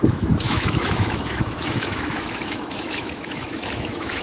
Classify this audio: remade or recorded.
remade